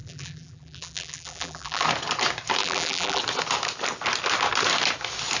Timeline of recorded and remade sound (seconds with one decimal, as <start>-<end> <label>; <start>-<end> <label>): 0.0-1.8 remade; 1.8-2.6 recorded; 2.6-3.2 remade; 3.2-5.4 recorded